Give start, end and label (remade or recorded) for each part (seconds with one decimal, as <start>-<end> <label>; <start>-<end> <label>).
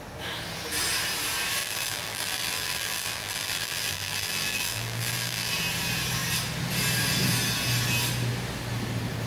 0.0-1.6 recorded; 1.6-5.5 remade; 5.5-9.3 recorded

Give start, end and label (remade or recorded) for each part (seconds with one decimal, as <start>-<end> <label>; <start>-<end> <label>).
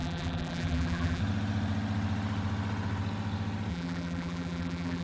0.0-1.2 remade; 1.2-3.7 recorded; 3.7-5.0 remade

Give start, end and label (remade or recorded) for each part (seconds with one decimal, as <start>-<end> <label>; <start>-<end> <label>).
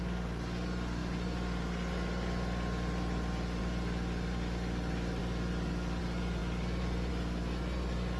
0.0-8.2 recorded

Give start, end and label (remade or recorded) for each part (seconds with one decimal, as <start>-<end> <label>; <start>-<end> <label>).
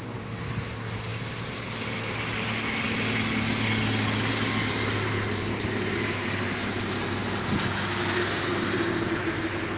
0.0-1.1 recorded; 1.1-2.2 remade; 2.2-4.6 recorded; 4.6-7.2 remade; 7.2-9.8 recorded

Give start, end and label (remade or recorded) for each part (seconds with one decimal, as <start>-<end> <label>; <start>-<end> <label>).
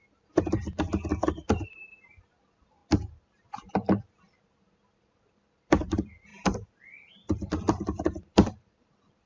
0.0-2.8 remade; 2.8-3.3 recorded; 3.3-6.3 remade; 6.3-7.1 recorded; 7.1-9.3 remade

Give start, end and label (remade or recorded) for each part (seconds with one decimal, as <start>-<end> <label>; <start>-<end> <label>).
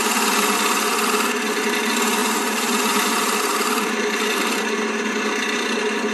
0.0-2.2 recorded; 2.2-4.4 remade; 4.4-6.1 recorded